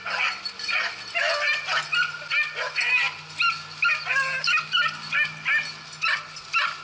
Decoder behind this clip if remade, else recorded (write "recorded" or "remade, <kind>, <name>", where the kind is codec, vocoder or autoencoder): recorded